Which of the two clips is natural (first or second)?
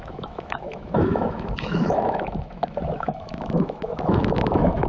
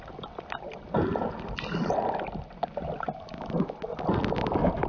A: second